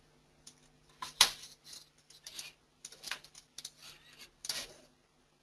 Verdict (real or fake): real